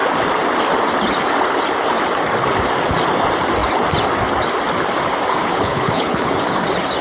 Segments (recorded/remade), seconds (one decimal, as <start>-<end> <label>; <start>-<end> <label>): 0.0-5.5 recorded; 5.5-6.3 remade; 6.3-7.0 recorded